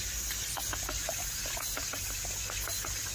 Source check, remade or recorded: recorded